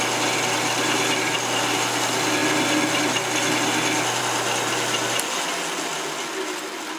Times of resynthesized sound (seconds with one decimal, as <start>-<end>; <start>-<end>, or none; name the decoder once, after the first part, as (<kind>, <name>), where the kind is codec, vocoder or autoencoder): none